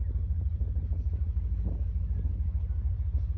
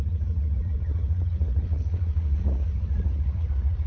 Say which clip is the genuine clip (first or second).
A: first